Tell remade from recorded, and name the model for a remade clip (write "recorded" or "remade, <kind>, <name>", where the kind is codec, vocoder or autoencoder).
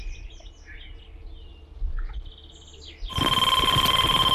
recorded